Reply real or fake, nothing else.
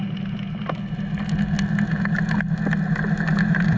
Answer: real